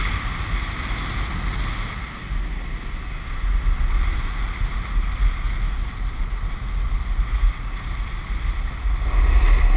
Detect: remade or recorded recorded